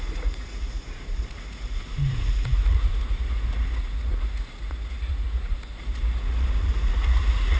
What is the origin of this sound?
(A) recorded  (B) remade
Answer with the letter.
B